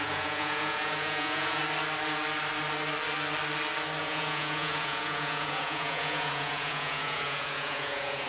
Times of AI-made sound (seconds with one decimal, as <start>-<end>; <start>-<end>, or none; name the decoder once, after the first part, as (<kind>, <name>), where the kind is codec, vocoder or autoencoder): 0.0-1.6 (vocoder, Vocos); 4.0-8.3